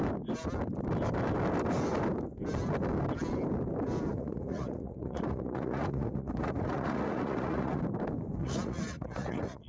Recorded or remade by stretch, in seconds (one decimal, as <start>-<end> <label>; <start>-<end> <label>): 0.0-4.1 recorded; 4.1-7.8 remade; 7.8-8.4 recorded; 8.4-9.7 remade